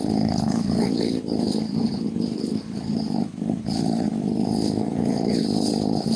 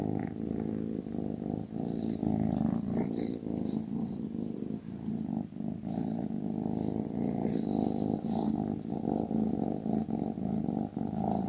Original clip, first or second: second